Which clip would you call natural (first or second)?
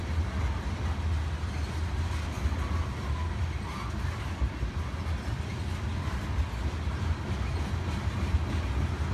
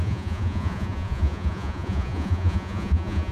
first